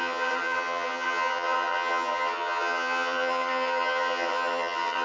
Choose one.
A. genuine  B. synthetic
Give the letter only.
B